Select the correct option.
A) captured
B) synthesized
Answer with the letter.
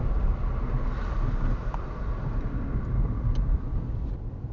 A